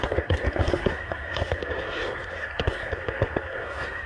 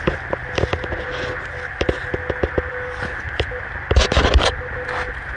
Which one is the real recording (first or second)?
second